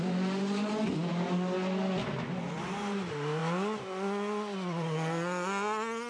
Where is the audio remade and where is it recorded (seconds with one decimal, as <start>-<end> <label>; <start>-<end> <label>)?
0.0-6.1 recorded